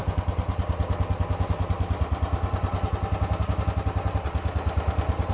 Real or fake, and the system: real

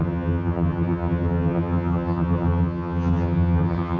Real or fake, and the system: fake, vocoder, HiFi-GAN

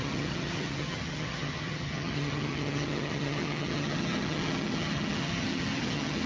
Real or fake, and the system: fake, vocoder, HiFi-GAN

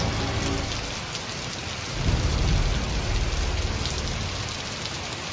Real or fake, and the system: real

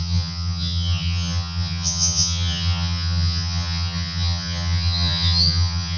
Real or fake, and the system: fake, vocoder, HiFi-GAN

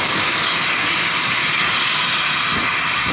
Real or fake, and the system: real